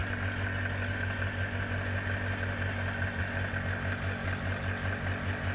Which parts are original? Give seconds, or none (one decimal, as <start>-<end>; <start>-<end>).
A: 0.0-5.5